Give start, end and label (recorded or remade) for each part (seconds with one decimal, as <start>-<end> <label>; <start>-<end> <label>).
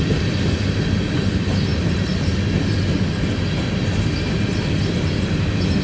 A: 0.0-5.8 recorded